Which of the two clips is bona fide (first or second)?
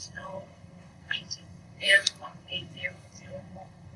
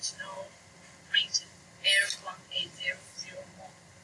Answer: second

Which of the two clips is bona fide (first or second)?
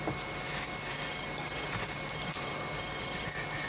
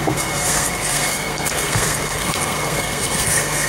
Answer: first